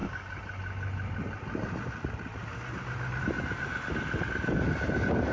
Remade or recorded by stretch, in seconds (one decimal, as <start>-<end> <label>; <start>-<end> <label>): 0.0-5.3 recorded

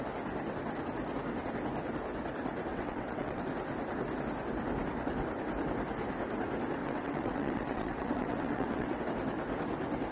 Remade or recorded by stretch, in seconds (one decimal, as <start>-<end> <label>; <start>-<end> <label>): 0.0-2.7 recorded; 2.7-3.4 remade; 3.4-6.8 recorded; 6.8-9.0 remade; 9.0-10.1 recorded

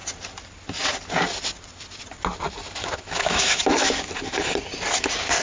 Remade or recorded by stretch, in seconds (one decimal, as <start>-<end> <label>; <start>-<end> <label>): 0.0-2.8 recorded; 2.8-4.1 remade; 4.1-5.4 recorded

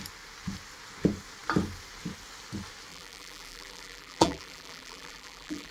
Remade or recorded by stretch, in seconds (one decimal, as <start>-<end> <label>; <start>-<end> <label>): 0.0-2.9 recorded; 2.9-5.7 remade

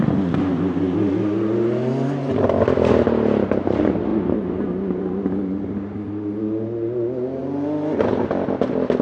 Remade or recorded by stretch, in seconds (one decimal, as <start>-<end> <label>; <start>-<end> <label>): 0.0-9.0 recorded

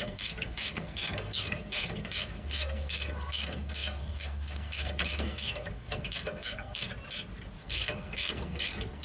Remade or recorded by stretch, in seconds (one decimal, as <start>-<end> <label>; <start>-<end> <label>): 0.0-6.9 remade; 6.9-7.6 recorded; 7.6-9.0 remade